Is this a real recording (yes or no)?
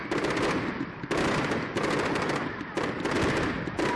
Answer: yes